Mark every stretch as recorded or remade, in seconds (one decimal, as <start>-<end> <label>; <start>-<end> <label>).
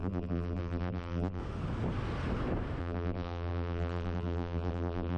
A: 0.0-1.4 remade; 1.4-2.8 recorded; 2.8-5.2 remade